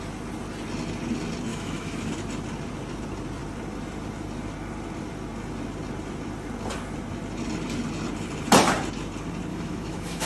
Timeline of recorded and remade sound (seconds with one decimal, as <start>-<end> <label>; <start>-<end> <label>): 0.0-1.5 recorded; 1.5-2.1 remade; 2.1-9.5 recorded; 9.5-10.3 remade